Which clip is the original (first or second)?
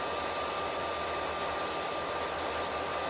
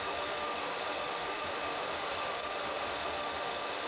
first